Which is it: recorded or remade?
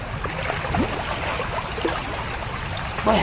recorded